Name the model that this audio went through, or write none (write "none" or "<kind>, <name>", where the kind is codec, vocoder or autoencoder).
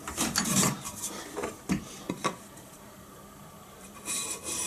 vocoder, BigVGAN v2